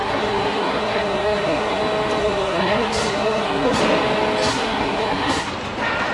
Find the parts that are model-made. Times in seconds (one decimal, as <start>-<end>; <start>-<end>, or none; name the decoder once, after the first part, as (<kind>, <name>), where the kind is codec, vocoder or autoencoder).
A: 0.0-1.8 (codec, SNAC); 2.2-3.8; 4.5-5.5

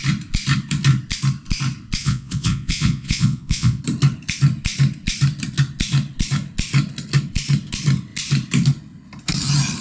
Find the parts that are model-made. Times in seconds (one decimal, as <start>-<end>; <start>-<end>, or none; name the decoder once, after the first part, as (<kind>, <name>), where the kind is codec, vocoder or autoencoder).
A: 2.0-3.8 (vocoder, Vocos)

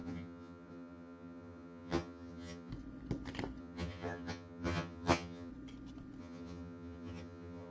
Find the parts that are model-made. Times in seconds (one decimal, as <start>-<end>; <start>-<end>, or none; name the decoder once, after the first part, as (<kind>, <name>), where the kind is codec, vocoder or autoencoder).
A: 0.0-2.7 (vocoder, HiFi-GAN); 3.6-5.5; 6.2-7.7

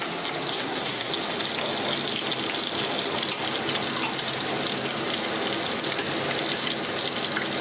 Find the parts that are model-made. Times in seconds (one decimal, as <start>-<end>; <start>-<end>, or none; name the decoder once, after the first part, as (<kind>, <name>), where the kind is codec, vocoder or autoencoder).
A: 0.5-1.1 (codec, SNAC)

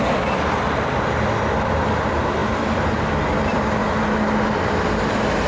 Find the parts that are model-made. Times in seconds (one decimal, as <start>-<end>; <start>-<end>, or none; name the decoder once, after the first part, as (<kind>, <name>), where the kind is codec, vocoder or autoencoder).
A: 0.0-2.4 (vocoder, BigVGAN v2); 3.2-3.8

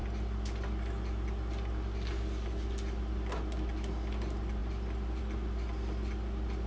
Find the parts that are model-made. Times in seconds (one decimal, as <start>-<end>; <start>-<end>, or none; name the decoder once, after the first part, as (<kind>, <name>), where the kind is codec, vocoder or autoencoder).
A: none

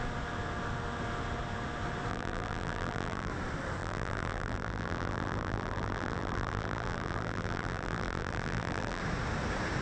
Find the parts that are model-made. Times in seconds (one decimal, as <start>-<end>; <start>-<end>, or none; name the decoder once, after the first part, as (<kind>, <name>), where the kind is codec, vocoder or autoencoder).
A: 2.1-3.3 (vocoder, BigVGAN v2); 3.8-9.0